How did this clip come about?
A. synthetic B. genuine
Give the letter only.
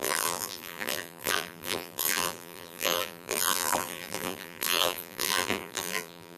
A